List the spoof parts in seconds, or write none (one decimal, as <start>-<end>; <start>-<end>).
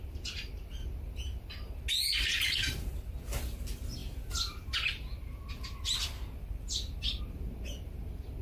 none